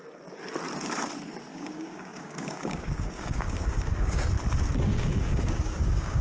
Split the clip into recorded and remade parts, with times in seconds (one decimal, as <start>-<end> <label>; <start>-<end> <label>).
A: 0.0-1.5 recorded; 1.5-4.2 remade; 4.2-4.9 recorded; 4.9-6.2 remade